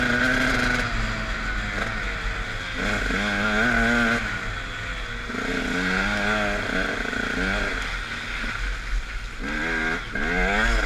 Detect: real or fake real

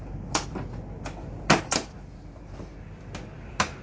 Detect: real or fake real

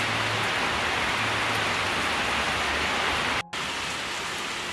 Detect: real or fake real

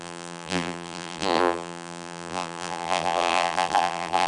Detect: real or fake fake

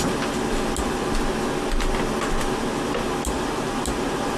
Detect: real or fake real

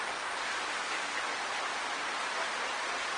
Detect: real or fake real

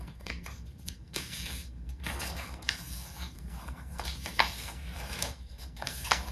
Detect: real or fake fake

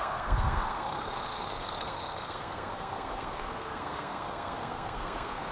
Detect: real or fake fake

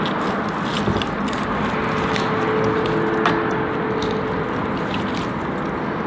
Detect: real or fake real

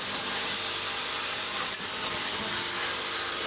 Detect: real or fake real